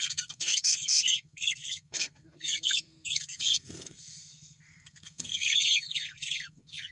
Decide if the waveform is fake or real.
fake